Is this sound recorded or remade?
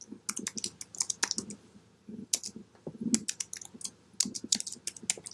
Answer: recorded